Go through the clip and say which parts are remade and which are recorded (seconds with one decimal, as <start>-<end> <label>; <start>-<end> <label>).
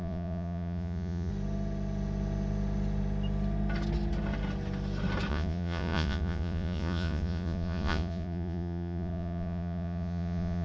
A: 0.0-1.3 remade; 1.3-5.3 recorded; 5.3-10.6 remade